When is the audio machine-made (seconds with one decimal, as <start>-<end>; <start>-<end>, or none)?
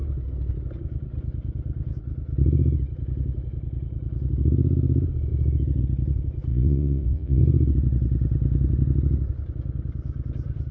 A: 6.5-7.4